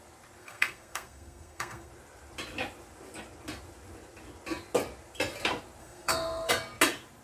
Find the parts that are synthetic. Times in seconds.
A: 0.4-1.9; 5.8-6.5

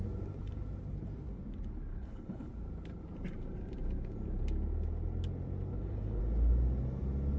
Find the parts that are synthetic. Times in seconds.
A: 1.9-2.5; 5.7-6.2

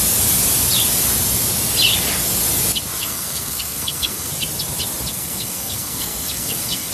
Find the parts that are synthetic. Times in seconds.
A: 3.0-4.3; 5.1-6.9

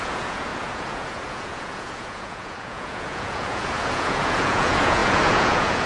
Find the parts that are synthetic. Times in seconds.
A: 0.0-5.9

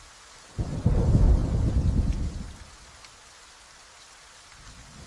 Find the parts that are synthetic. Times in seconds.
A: none

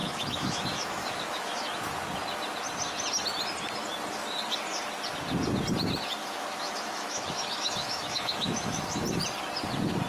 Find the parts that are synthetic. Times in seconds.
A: 0.0-1.6; 6.2-9.0

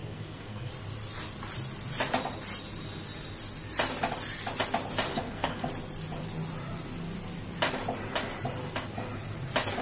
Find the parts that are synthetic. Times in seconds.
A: 0.0-0.7; 5.1-5.7

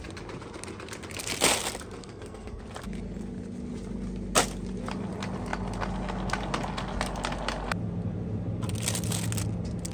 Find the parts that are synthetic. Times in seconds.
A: 2.0-2.6